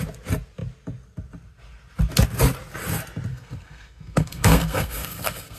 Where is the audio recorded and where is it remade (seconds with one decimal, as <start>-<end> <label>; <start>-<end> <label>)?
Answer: 0.0-3.3 recorded; 3.3-5.6 remade